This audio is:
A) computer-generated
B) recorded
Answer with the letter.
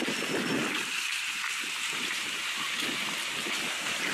B